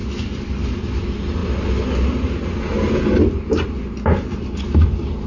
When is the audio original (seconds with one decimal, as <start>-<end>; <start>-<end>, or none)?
0.0-5.3